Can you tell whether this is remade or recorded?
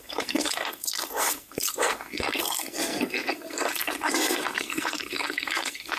remade